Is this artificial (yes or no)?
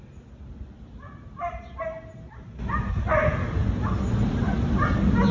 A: no